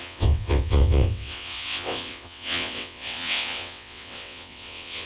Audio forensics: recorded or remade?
remade